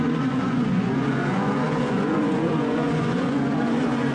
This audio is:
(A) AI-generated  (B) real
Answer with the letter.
A